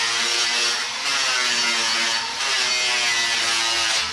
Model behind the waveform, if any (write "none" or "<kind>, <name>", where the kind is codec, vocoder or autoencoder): none